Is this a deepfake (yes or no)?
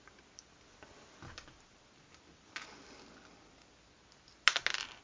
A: no